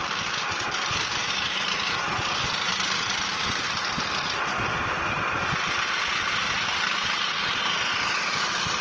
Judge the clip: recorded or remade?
recorded